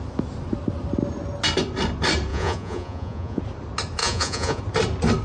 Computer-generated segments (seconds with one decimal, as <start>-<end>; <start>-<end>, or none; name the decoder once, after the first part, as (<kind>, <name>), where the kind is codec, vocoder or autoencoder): 2.3-3.4 (vocoder, Vocos); 4.0-4.6